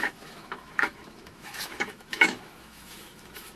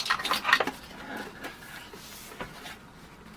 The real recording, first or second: second